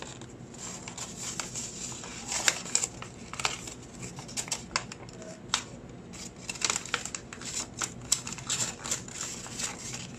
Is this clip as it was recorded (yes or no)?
yes